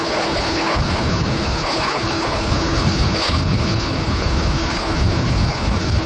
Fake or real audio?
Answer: fake